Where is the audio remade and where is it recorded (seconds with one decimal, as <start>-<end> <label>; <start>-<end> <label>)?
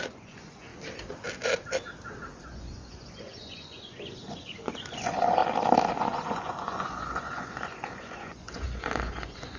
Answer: 0.0-0.7 remade; 0.7-2.2 recorded; 2.2-5.4 remade; 5.4-5.9 recorded; 5.9-9.6 remade